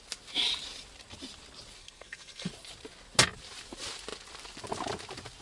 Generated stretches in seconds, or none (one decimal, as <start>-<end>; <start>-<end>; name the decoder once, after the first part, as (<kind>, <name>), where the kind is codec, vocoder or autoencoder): 1.8-2.5 (codec, SNAC)